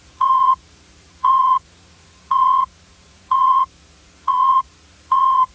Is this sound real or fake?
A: fake